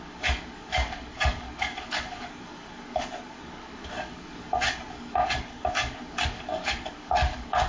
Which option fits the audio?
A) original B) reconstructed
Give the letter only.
B